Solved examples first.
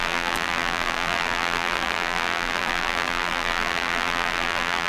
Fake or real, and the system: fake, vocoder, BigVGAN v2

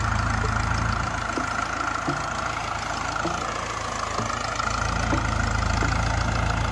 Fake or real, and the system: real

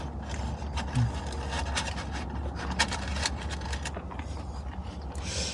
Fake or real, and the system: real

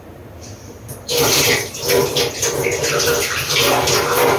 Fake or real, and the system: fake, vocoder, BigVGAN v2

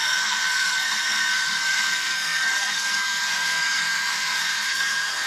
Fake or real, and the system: fake, codec, SNAC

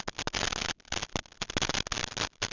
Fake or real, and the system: real